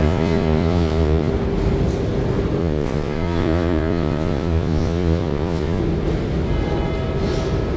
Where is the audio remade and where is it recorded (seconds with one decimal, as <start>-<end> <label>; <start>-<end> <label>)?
0.0-1.3 remade; 1.3-2.6 recorded; 2.6-5.8 remade; 5.8-7.8 recorded